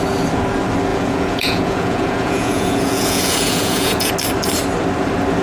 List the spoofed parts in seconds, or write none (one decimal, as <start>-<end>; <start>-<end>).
0.9-4.1